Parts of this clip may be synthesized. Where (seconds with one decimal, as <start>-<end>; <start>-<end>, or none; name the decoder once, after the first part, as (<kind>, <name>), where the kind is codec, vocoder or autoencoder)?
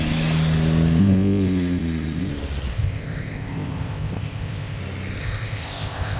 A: 1.0-2.3 (codec, ZipCodec); 2.7-4.8; 5.2-6.2